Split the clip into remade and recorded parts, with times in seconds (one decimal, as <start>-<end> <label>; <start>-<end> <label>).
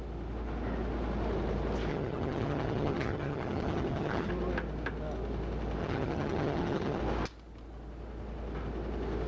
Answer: 0.0-1.9 recorded; 1.9-4.3 remade; 4.3-5.8 recorded; 5.8-7.0 remade; 7.0-9.3 recorded